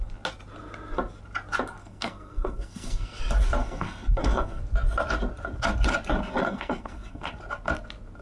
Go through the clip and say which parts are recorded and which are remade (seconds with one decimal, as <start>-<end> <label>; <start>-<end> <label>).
0.0-1.8 recorded; 1.8-3.2 remade; 3.2-3.6 recorded; 3.6-4.6 remade; 4.6-6.4 recorded; 6.4-7.3 remade; 7.3-8.2 recorded